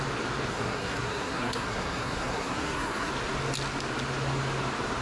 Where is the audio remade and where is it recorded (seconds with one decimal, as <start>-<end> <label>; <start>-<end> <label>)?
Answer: 0.0-0.5 recorded; 0.5-3.1 remade; 3.1-5.0 recorded